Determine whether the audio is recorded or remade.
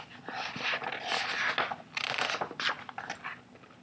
recorded